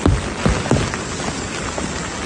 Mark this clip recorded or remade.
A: recorded